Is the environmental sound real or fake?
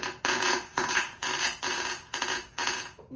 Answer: fake